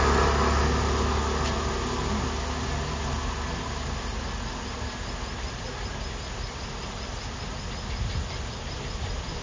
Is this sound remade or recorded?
recorded